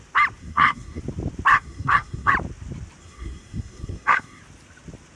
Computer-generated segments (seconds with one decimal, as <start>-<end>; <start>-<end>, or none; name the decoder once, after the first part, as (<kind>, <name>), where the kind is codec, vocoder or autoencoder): 0.4-1.0 (codec, SNAC); 1.5-2.3; 3.0-4.4